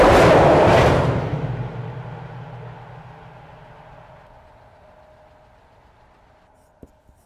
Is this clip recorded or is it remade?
recorded